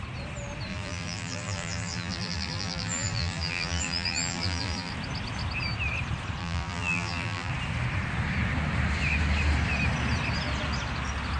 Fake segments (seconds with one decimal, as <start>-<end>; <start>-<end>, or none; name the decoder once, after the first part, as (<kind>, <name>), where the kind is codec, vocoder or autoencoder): 0.7-4.9 (vocoder, BigVGAN v2); 6.4-7.5